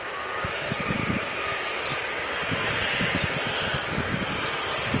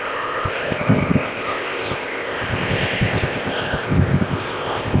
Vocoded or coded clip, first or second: second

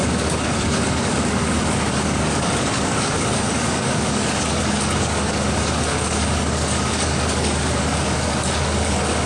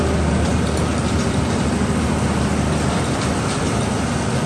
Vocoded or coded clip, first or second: first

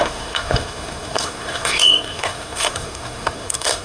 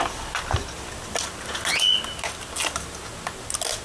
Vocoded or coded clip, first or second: first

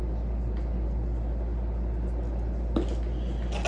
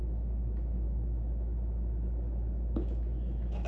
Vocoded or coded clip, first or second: second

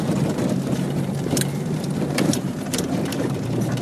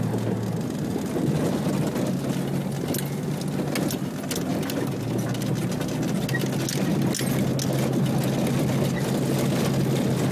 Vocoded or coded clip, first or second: first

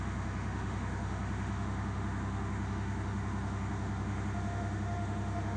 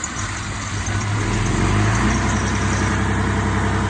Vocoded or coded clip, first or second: first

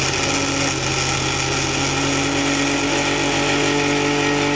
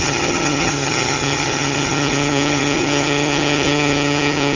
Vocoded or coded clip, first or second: second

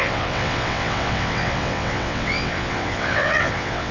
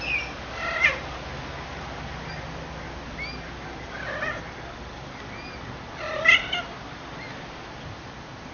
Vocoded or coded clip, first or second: first